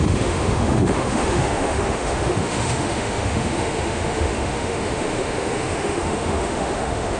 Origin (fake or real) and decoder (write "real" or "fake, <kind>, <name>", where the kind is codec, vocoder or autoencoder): fake, autoencoder, DAC-VAE